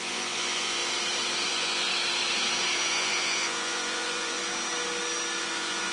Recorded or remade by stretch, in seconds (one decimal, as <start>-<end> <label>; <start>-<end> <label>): 0.0-0.8 remade; 0.8-1.5 recorded; 1.5-1.9 remade; 1.9-2.8 recorded; 2.8-4.4 remade; 4.4-5.4 recorded; 5.4-5.9 remade